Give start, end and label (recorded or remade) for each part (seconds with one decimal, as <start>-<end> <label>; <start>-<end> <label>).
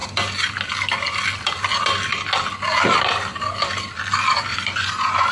0.0-4.5 recorded; 4.5-5.3 remade